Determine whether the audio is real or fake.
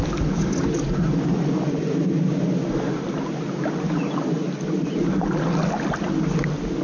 real